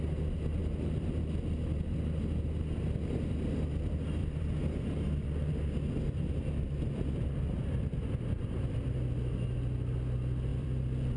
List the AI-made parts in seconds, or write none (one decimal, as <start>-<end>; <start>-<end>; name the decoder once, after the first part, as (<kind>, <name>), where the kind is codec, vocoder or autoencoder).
4.2-5.5 (vocoder, BigVGAN v2); 10.5-11.2